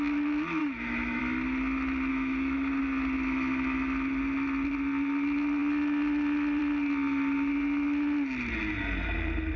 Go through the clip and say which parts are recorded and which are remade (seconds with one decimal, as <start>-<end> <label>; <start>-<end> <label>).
0.0-0.6 recorded; 0.6-1.2 remade; 1.2-2.1 recorded; 2.1-2.8 remade; 2.8-9.6 recorded